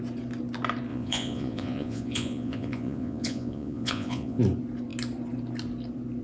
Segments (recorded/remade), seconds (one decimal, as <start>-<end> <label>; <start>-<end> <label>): 0.0-0.9 recorded; 0.9-4.4 remade; 4.4-6.2 recorded